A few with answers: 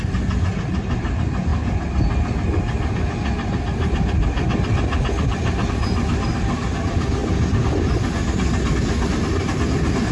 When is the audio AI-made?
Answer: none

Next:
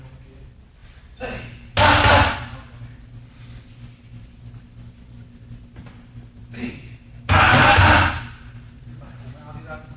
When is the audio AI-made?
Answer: none

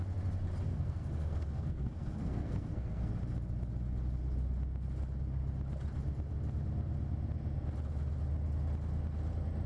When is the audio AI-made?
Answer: 0.7-3.1 (codec, SNAC)

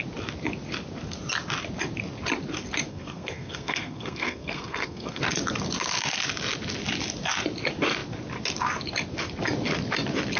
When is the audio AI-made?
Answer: 2.9-5.2 (codec, SNAC)

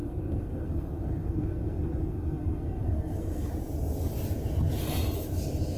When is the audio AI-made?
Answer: 0.0-3.5 (codec, SNAC)

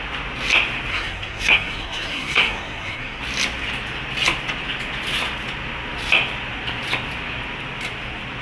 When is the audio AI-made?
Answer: 0.9-3.2 (codec, SNAC)